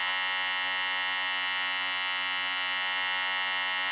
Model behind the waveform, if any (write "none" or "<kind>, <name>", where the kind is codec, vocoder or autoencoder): none